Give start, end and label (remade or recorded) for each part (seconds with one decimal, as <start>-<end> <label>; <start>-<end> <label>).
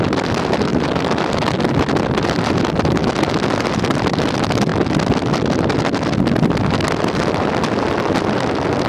0.0-8.9 recorded